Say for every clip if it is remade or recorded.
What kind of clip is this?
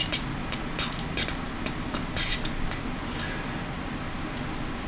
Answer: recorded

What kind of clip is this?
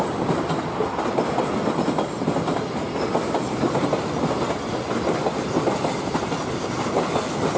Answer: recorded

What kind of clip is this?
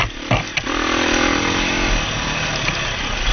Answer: recorded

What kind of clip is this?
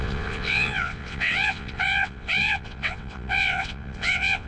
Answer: remade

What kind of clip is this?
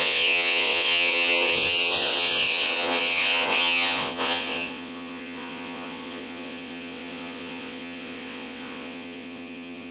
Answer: remade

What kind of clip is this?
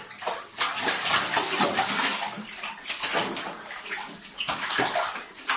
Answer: recorded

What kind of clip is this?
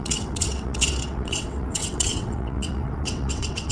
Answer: remade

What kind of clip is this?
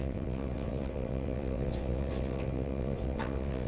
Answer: remade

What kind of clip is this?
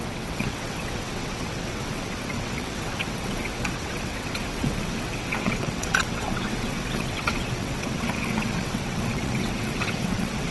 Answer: remade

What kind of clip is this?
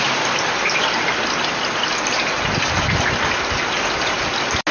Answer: recorded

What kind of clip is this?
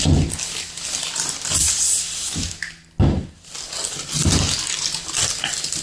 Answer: recorded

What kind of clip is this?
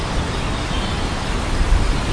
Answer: recorded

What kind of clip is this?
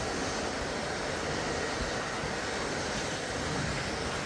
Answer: recorded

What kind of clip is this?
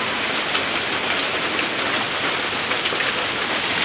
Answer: recorded